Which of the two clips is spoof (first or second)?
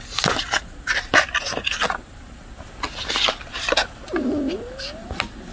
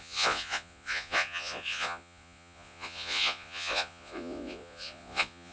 second